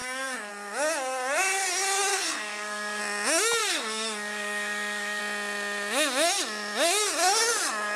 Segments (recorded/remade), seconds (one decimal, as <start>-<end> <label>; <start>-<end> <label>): 0.0-0.5 remade; 0.5-2.1 recorded; 2.1-3.0 remade; 3.0-3.6 recorded; 3.6-5.2 remade; 5.2-8.0 recorded